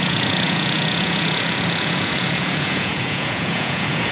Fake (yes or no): yes